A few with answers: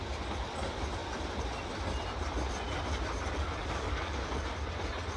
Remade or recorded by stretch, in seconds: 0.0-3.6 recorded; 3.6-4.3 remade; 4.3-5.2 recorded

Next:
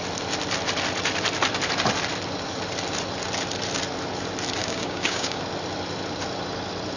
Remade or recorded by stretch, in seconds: 0.0-4.6 recorded; 4.6-5.4 remade; 5.4-7.0 recorded

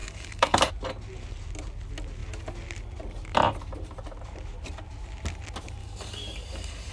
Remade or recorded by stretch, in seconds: 0.0-0.7 remade; 0.7-5.8 recorded; 5.8-6.9 remade

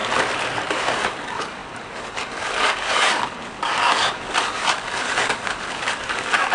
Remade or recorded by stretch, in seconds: 0.0-0.7 recorded; 0.7-6.5 remade

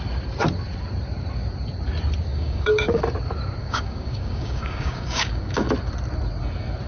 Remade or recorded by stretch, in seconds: 0.0-2.3 recorded; 2.3-3.0 remade; 3.0-3.6 recorded; 3.6-5.7 remade; 5.7-6.9 recorded